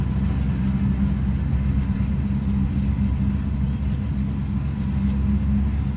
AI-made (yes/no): no